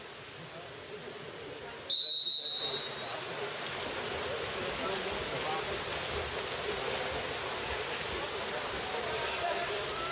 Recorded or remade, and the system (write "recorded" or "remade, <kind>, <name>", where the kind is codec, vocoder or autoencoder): recorded